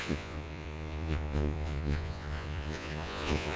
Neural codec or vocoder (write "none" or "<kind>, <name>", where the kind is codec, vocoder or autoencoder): vocoder, Vocos